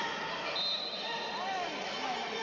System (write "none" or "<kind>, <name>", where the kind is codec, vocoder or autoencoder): none